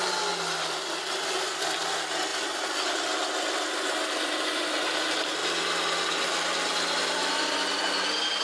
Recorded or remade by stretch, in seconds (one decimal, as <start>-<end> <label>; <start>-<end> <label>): 0.0-8.4 recorded